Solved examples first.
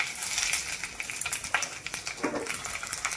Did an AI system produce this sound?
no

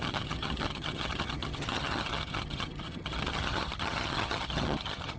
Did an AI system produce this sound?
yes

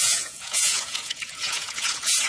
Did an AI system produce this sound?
yes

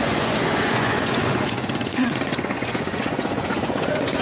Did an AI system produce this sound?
yes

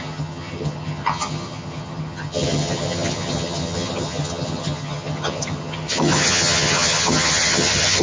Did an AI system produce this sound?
yes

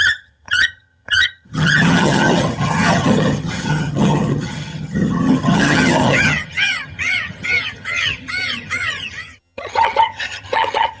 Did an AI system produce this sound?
yes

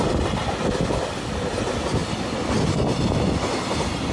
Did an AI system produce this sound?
no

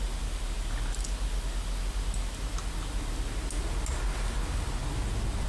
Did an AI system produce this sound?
no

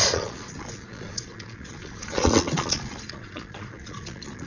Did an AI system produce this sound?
yes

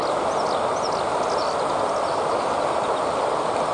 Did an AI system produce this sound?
no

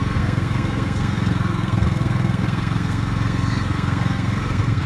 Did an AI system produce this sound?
yes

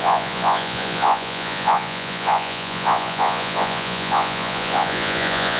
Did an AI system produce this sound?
yes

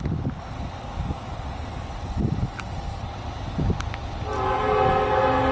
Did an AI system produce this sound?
no